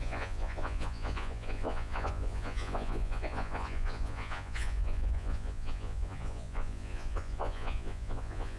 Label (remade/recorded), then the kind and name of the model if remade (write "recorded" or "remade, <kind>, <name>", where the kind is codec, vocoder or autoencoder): remade, vocoder, Vocos